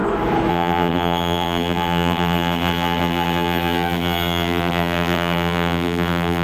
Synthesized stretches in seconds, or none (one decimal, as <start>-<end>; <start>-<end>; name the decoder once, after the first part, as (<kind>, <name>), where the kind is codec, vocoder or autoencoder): 0.5-6.4 (vocoder, BigVGAN v2)